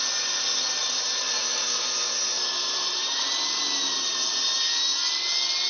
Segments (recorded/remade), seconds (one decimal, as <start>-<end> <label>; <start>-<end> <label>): 0.0-0.8 recorded; 0.8-3.3 remade; 3.3-5.7 recorded